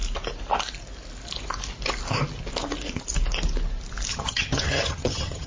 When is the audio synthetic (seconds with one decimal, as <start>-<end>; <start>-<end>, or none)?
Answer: 4.1-5.5